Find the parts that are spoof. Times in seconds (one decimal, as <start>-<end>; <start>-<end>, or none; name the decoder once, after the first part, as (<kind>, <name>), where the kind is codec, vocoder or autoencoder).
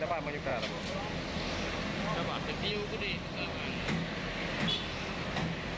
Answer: none